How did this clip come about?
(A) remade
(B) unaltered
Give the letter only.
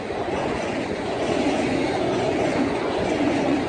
A